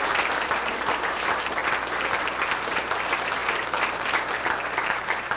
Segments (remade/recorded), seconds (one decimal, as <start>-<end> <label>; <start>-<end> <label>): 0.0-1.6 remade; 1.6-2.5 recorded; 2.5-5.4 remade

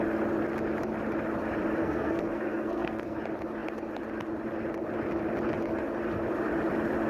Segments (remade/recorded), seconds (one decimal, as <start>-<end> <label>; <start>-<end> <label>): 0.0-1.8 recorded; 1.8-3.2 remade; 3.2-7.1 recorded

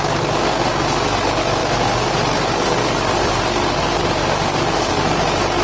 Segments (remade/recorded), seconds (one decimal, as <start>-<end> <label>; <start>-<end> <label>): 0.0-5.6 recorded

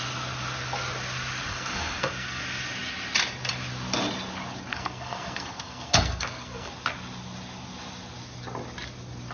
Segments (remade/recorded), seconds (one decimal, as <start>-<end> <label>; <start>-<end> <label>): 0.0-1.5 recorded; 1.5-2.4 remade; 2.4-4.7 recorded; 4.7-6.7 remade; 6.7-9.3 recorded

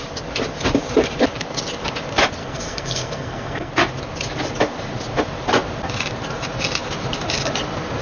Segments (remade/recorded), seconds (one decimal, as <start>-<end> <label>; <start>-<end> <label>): 0.0-2.4 recorded; 2.4-3.7 remade; 3.7-8.0 recorded